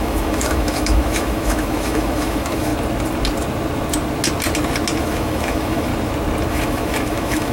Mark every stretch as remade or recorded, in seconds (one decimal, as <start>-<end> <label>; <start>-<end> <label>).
0.0-2.7 remade; 2.7-5.0 recorded; 5.0-5.9 remade; 5.9-6.5 recorded; 6.5-7.5 remade